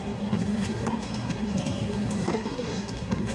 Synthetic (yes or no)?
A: yes